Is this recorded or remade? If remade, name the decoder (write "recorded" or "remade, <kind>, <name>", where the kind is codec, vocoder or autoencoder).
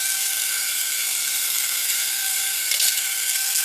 remade, codec, SNAC